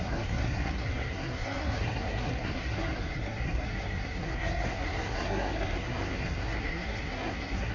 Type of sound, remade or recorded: remade